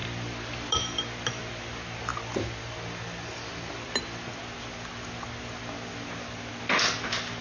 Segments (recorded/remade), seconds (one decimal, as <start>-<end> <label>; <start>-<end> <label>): 0.0-7.4 recorded